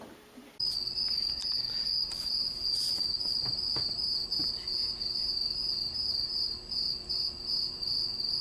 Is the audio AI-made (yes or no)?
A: no